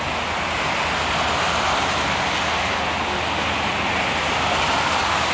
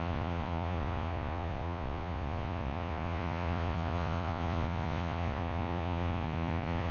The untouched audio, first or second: first